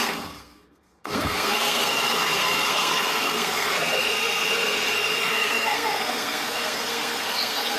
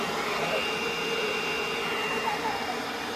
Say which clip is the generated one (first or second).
first